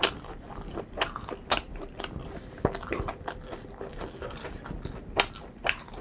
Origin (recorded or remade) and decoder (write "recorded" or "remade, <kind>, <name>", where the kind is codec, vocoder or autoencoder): recorded